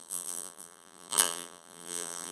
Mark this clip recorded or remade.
remade